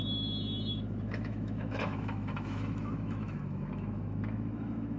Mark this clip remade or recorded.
remade